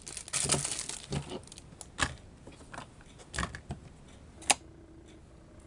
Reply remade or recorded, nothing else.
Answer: recorded